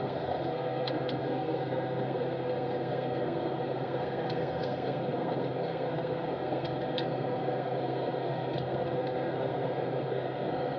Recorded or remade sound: remade